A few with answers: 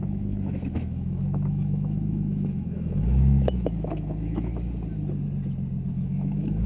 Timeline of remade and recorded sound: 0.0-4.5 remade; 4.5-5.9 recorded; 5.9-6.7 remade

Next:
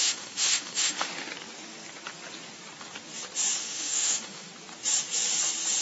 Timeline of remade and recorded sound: 0.0-1.1 remade; 1.1-3.6 recorded; 3.6-4.5 remade; 4.5-5.8 recorded

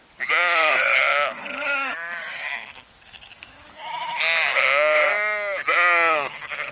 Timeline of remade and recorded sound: 0.0-1.1 recorded; 1.1-4.2 remade; 4.2-6.7 recorded

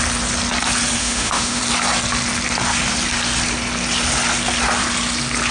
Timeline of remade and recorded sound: 0.0-1.0 recorded; 1.0-1.6 remade; 1.6-5.5 recorded

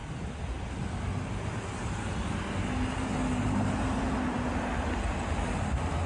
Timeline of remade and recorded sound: 0.0-6.1 recorded

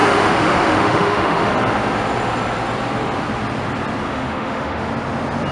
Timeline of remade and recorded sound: 0.0-1.5 remade; 1.5-4.1 recorded; 4.1-4.9 remade; 4.9-5.5 recorded

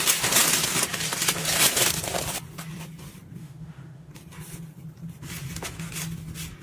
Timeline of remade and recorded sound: 0.0-3.4 recorded; 3.4-4.1 remade; 4.1-6.6 recorded

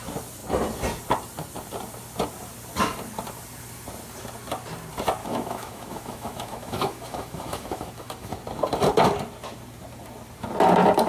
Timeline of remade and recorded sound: 0.0-5.2 recorded; 5.2-8.3 remade; 8.3-11.1 recorded